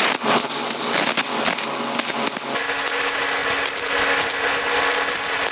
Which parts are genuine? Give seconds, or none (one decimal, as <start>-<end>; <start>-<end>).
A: 0.0-5.5